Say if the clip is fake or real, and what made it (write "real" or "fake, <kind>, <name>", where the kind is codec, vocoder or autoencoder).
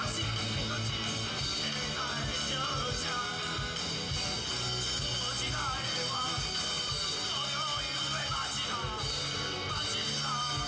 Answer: real